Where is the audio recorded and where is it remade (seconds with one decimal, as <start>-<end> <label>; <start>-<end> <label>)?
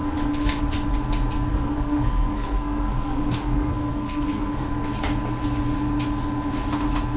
0.0-0.6 remade; 0.6-1.5 recorded; 1.5-4.7 remade; 4.7-7.2 recorded